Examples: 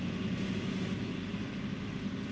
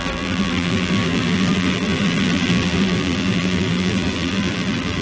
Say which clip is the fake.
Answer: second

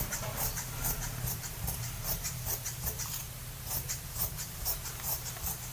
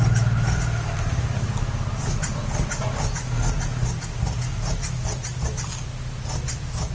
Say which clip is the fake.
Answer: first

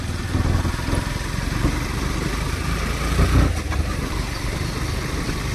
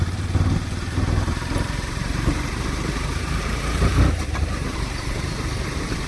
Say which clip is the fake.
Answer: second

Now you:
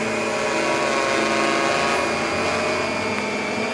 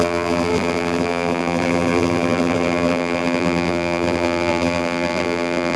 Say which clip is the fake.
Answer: second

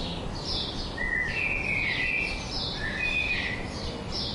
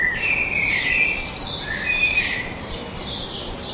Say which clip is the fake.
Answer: second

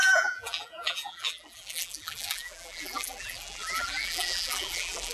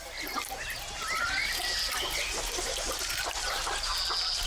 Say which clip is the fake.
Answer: first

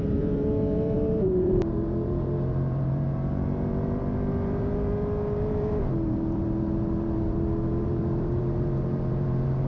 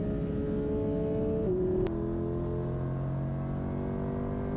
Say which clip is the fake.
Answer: first